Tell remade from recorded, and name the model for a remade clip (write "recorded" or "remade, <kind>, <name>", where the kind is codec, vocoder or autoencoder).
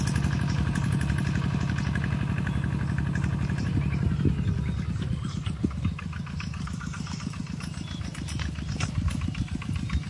recorded